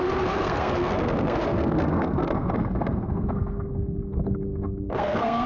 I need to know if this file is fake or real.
fake